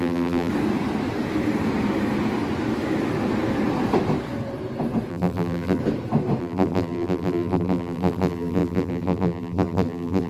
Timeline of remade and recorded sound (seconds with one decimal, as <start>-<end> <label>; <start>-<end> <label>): 0.0-0.5 remade; 0.5-5.1 recorded; 5.1-5.8 remade; 5.8-6.4 recorded; 6.4-10.3 remade